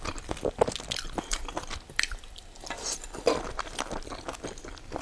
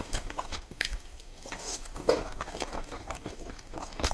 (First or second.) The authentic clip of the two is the first